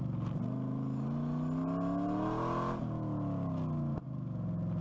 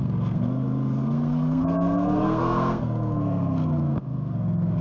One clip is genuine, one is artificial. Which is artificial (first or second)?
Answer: second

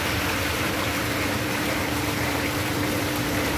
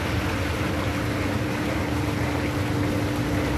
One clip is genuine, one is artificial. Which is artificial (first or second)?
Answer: first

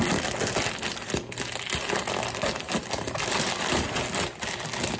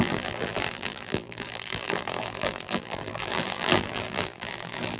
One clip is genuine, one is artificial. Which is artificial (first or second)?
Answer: second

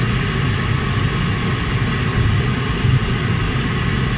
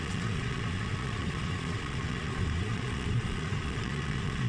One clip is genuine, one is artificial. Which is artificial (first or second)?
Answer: second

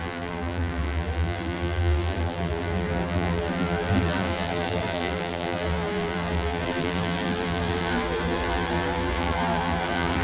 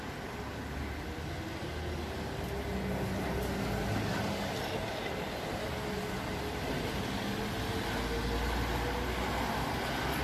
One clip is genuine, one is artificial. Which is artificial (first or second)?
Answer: first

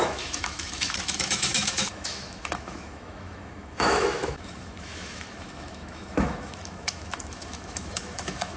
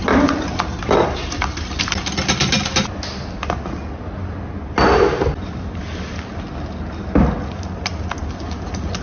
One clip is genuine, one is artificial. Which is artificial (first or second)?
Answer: first